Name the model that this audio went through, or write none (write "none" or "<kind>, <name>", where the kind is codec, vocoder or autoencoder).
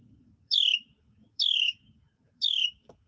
autoencoder, DAC-VAE